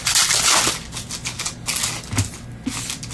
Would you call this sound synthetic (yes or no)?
no